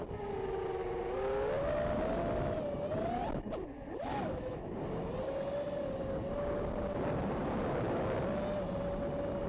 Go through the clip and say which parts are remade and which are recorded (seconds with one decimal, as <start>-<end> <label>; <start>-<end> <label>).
0.0-4.1 recorded; 4.1-4.7 remade; 4.7-9.5 recorded